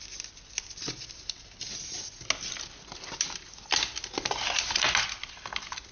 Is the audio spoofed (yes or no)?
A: no